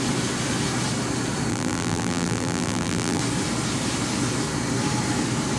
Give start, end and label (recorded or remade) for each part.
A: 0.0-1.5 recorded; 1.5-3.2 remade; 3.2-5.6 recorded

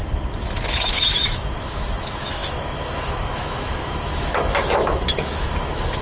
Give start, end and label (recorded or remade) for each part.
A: 0.0-0.7 recorded; 0.7-6.0 remade

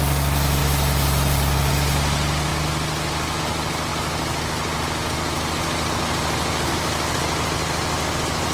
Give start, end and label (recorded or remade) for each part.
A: 0.0-6.7 recorded; 6.7-7.2 remade; 7.2-8.5 recorded

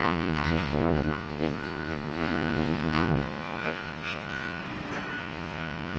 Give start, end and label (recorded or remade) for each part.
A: 0.0-4.6 remade; 4.6-5.2 recorded; 5.2-6.0 remade

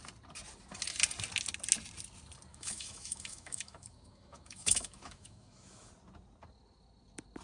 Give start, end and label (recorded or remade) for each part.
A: 0.0-2.5 recorded; 2.5-5.9 remade; 5.9-7.4 recorded

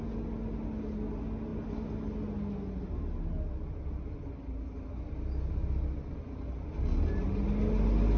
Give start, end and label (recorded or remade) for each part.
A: 0.0-8.2 recorded